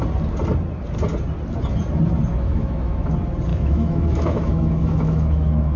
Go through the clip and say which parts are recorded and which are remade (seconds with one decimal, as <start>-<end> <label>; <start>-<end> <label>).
0.0-2.3 recorded; 2.3-3.1 remade; 3.1-3.5 recorded; 3.5-5.8 remade